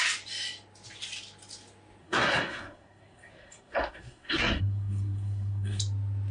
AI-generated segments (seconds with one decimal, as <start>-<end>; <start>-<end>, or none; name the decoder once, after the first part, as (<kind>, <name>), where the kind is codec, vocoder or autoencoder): 2.0-5.8 (codec, SNAC)